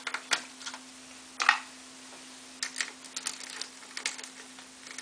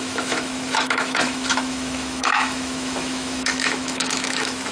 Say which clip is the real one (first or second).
first